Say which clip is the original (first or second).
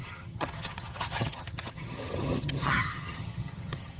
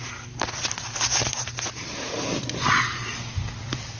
second